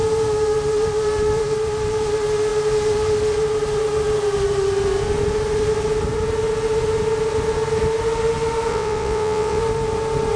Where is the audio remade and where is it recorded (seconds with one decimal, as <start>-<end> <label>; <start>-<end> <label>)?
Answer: 0.0-8.7 recorded; 8.7-9.6 remade; 9.6-10.4 recorded